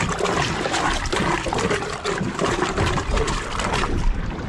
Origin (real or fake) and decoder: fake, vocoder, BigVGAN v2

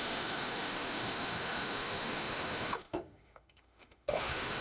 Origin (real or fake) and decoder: fake, autoencoder, DAC-VAE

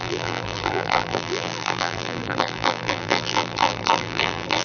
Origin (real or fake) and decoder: fake, vocoder, BigVGAN v2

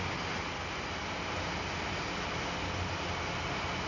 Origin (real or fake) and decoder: real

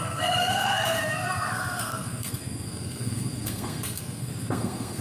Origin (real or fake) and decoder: fake, codec, SNAC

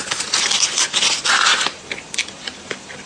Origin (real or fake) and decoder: real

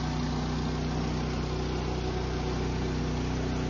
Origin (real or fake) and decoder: real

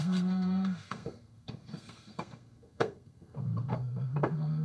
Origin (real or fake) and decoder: fake, codec, SNAC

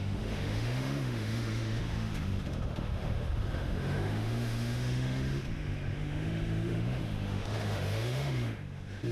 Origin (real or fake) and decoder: fake, autoencoder, DAC-VAE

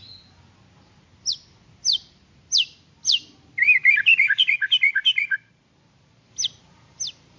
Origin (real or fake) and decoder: real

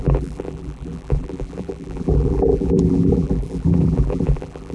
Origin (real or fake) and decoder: fake, vocoder, BigVGAN v2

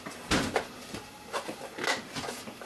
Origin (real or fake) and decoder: real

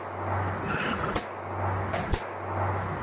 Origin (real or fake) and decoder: real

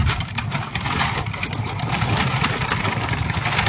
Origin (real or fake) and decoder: fake, vocoder, BigVGAN v2